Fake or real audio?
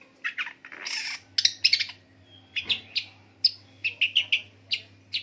real